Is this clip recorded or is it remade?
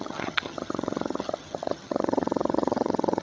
remade